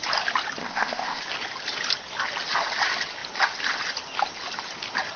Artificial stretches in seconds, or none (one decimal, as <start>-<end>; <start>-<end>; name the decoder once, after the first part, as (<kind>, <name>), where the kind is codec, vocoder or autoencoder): 0.6-1.2 (codec, ZipCodec)